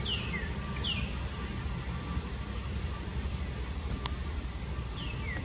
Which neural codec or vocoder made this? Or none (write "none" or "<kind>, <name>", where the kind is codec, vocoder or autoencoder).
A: none